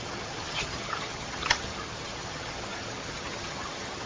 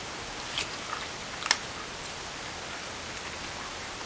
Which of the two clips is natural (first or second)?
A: second